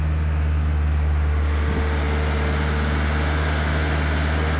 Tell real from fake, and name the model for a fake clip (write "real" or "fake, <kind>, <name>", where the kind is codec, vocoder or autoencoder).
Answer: real